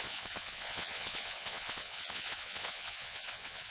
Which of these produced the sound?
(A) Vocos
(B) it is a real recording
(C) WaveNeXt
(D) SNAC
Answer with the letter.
A